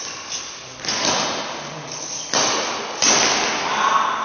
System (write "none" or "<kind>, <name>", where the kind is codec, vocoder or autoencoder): none